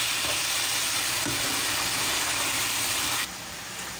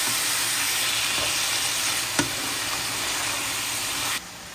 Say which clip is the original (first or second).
second